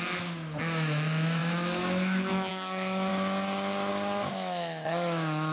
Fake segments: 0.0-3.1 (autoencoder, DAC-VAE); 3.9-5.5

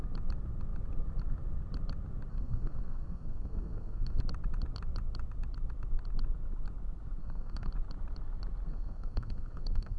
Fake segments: 2.3-4.2 (codec, SNAC); 7.2-7.7; 8.7-10.0